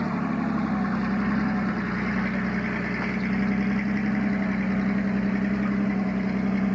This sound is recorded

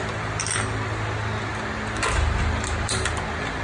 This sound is recorded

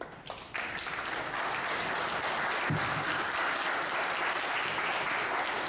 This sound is recorded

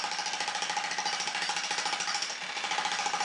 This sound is recorded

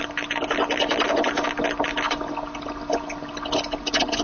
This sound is recorded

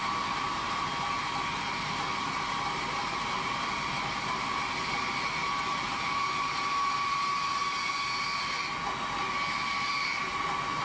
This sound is recorded